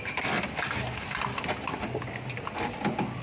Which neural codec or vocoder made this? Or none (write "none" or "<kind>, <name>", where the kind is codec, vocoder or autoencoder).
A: none